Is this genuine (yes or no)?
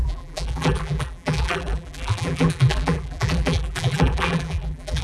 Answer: no